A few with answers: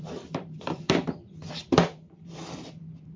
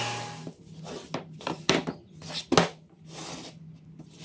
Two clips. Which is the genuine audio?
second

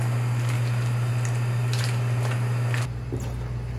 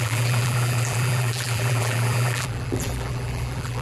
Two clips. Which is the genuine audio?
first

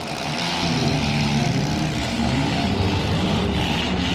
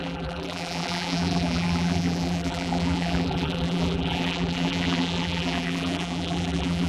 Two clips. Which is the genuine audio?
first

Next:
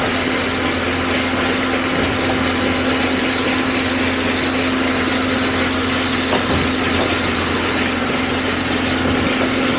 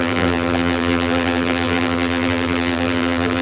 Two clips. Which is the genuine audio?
first